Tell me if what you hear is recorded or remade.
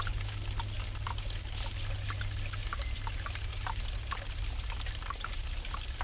recorded